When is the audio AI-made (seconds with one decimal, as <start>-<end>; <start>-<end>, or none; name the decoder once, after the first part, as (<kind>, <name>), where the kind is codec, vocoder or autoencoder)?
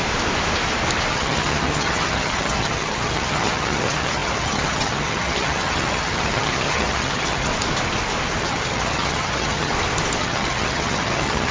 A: 1.1-7.5 (vocoder, HiFi-GAN); 8.4-9.7; 10.2-11.5